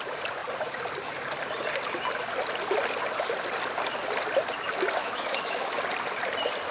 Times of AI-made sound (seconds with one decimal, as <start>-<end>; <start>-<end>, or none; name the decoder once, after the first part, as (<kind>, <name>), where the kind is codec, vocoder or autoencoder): 5.0-5.8 (autoencoder, DAC-VAE)